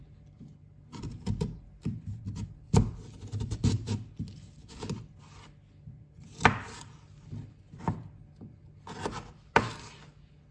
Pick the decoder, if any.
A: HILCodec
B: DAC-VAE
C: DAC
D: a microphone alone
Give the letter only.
D